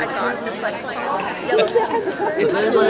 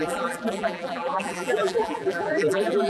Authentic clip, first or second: first